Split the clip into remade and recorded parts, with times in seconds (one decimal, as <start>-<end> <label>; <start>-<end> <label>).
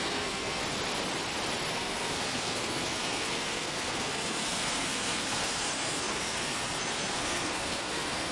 0.0-0.6 remade; 0.6-1.7 recorded; 1.7-8.3 remade